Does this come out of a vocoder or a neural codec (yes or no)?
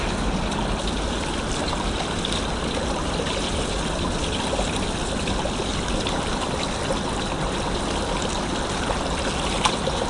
no